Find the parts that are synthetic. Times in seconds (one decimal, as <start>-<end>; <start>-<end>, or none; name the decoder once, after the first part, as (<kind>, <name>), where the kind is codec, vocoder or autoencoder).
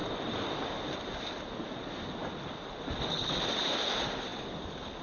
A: none